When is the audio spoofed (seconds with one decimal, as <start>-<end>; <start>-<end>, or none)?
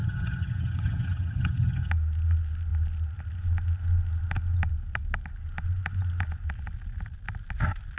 0.0-1.9